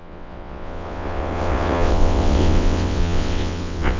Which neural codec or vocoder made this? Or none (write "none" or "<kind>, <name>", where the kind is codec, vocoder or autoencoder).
vocoder, WaveNeXt